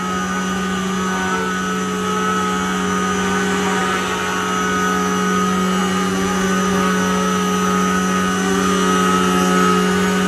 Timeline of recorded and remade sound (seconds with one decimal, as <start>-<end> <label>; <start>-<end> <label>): 0.0-10.3 recorded